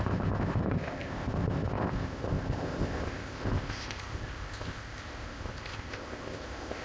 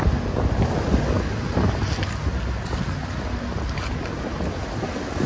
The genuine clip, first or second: second